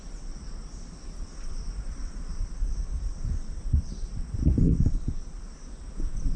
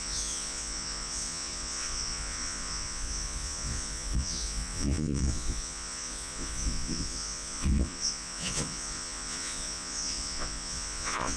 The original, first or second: first